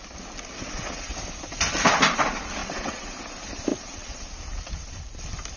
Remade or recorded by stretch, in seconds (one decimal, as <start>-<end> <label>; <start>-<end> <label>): 0.0-0.5 recorded; 0.5-1.1 remade; 1.1-2.6 recorded; 2.6-3.2 remade; 3.2-3.7 recorded; 3.7-4.2 remade; 4.2-5.6 recorded